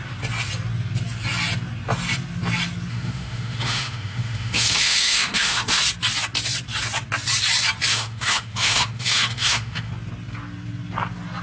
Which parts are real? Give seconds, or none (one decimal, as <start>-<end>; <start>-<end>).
0.0-2.9; 5.8-7.9; 9.9-11.4